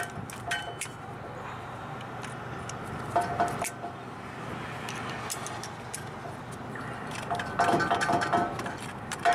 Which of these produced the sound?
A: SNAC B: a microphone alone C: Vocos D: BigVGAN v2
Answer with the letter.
B